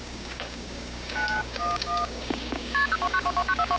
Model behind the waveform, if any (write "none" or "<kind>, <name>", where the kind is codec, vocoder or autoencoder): codec, DAC